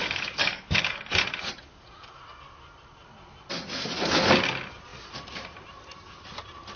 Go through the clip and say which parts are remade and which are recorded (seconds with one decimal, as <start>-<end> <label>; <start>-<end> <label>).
0.0-1.1 remade; 1.1-6.8 recorded